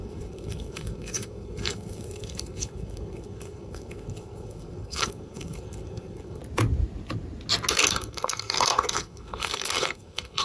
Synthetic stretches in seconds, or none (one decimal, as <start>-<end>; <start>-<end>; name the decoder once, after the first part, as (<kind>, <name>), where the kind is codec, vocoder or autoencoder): 0.0-6.4 (codec, SNAC); 7.7-10.4